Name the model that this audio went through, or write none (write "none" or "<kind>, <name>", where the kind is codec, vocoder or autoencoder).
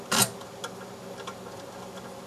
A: none